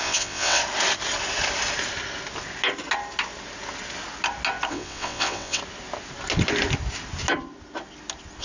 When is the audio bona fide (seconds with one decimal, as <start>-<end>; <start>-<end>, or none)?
0.6-4.7; 5.6-8.4